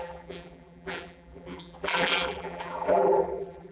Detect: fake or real fake